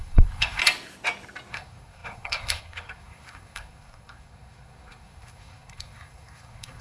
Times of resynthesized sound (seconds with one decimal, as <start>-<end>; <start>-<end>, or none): 0.0-0.6; 1.5-6.8